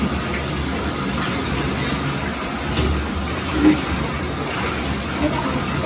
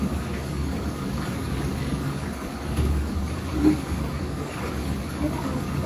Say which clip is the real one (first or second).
first